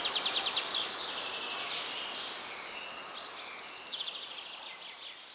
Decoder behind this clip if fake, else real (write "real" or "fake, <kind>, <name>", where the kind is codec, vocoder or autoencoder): real